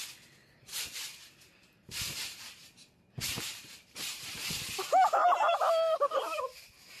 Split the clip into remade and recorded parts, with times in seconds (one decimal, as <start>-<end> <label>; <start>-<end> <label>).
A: 0.0-0.4 recorded; 0.4-4.6 remade; 4.6-5.2 recorded; 5.2-6.4 remade; 6.4-7.0 recorded